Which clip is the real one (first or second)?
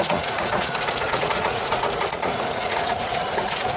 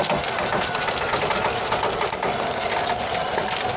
second